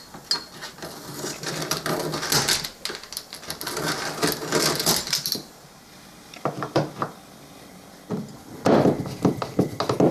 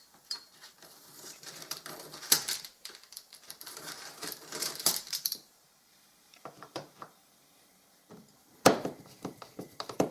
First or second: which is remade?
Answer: second